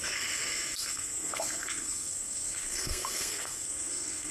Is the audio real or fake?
fake